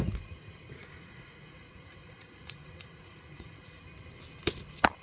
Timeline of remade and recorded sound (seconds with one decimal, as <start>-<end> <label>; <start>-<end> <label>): 0.0-0.8 recorded; 0.8-3.8 remade; 3.8-5.0 recorded